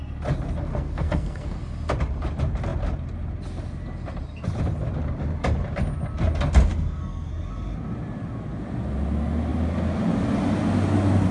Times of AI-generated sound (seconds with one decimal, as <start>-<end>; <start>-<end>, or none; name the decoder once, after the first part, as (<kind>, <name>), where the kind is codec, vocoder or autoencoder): 0.7-1.6 (codec, SNAC); 6.7-7.3